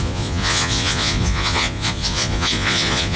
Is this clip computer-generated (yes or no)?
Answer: yes